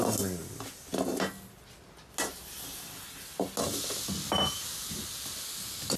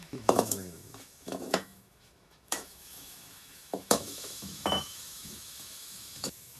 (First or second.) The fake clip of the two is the second